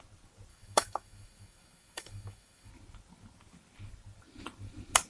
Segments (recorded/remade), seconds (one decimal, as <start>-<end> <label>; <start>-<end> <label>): 0.0-0.5 recorded; 0.5-2.7 remade; 2.7-5.1 recorded